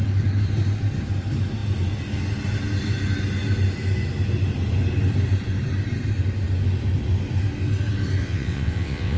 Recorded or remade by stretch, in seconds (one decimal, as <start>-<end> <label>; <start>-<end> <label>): 0.0-8.2 recorded; 8.2-9.2 remade